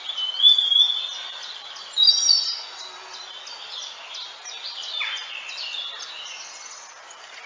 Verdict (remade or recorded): recorded